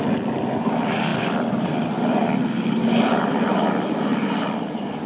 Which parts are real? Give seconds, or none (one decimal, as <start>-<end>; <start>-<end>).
0.0-5.1